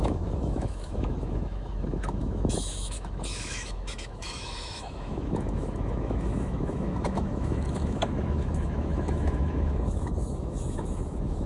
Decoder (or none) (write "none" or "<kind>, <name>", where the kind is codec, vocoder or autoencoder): autoencoder, DAC-VAE